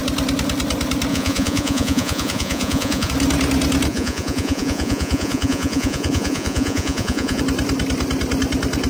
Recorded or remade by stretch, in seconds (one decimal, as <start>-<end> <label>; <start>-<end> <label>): 0.0-1.1 recorded; 1.1-3.1 remade; 3.1-3.9 recorded; 3.9-7.4 remade; 7.4-8.9 recorded

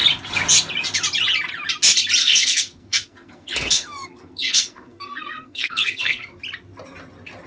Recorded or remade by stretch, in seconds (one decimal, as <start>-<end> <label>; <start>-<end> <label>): 0.0-2.2 recorded; 2.2-6.4 remade; 6.4-7.5 recorded

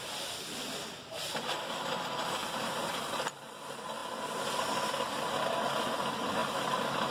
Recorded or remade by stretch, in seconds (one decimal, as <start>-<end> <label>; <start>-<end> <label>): 0.0-2.4 recorded; 2.4-3.0 remade; 3.0-7.1 recorded

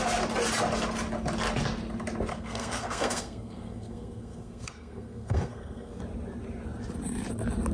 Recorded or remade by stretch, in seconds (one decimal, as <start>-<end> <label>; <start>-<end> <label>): 0.0-2.3 recorded; 2.3-6.0 remade; 6.0-7.7 recorded

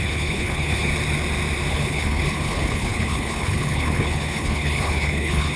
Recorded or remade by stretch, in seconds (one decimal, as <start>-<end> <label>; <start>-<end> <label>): 0.0-0.9 remade; 0.9-1.7 recorded; 1.7-5.6 remade